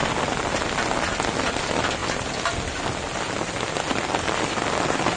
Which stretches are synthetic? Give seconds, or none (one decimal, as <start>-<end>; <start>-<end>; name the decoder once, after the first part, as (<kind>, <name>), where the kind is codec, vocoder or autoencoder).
2.0-2.8 (vocoder, BigVGAN v2)